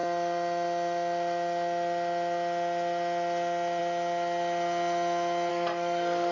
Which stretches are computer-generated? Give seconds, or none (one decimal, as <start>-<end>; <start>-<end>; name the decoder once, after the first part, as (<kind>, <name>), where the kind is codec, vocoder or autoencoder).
5.5-6.3 (codec, SNAC)